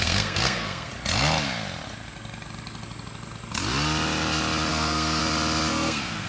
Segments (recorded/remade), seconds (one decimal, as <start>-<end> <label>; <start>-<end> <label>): 0.0-0.9 remade; 0.9-4.7 recorded; 4.7-5.2 remade; 5.2-5.7 recorded; 5.7-6.3 remade